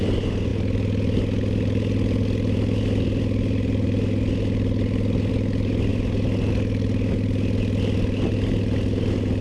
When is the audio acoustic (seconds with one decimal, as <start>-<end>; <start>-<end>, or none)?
0.0-9.4